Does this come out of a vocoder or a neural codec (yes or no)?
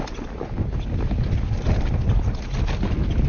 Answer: no